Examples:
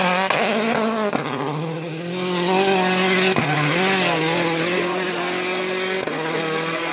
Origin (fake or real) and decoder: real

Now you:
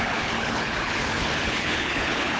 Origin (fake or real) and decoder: fake, codec, HILCodec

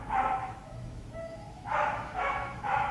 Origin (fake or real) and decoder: fake, autoencoder, DAC-VAE